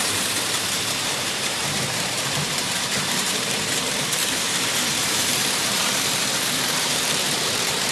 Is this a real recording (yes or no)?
no